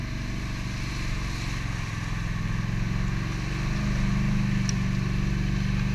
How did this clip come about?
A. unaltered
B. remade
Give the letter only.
A